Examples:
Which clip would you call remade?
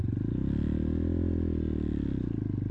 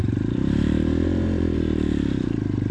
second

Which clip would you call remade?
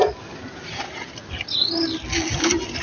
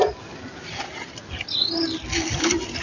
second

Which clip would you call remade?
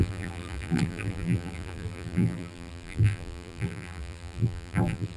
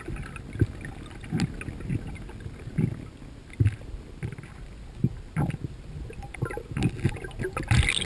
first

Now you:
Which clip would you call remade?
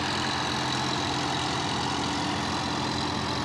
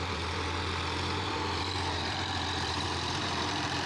second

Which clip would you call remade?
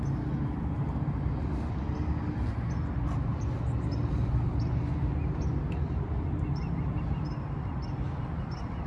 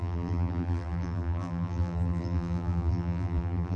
second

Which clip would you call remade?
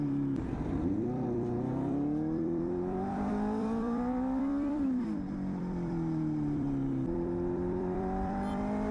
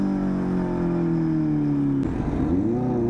first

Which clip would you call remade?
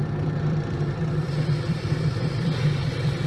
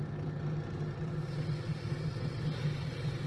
first